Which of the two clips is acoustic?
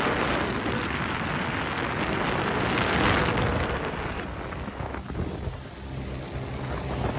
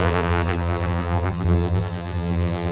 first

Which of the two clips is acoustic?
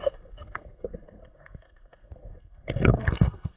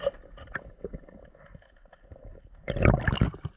second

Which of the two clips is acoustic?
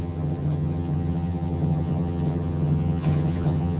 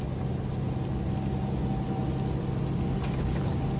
second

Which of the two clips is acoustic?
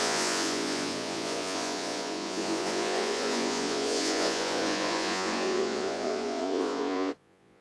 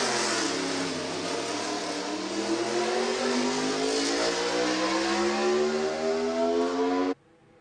second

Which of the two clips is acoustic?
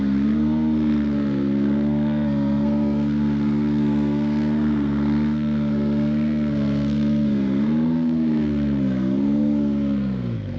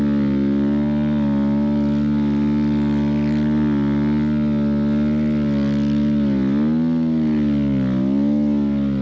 second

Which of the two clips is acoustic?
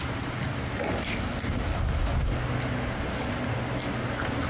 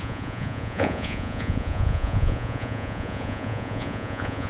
first